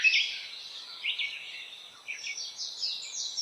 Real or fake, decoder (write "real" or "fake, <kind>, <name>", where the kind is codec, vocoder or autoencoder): real